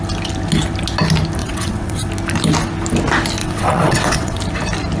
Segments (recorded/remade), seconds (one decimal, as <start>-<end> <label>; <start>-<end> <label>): 0.0-1.4 recorded; 1.4-2.1 remade; 2.1-3.4 recorded; 3.4-4.4 remade; 4.4-5.0 recorded